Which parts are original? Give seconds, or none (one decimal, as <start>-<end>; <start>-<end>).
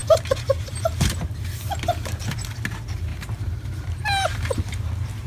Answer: 0.0-3.1